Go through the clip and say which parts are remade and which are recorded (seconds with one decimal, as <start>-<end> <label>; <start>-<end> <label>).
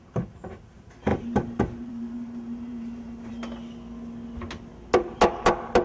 0.0-1.1 recorded; 1.1-3.3 remade; 3.3-5.8 recorded